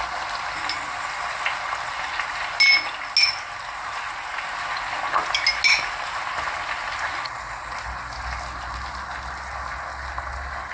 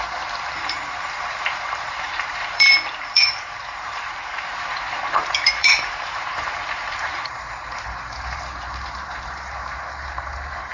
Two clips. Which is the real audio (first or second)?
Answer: first